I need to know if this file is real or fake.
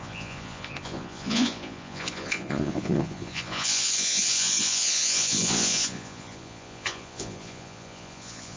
fake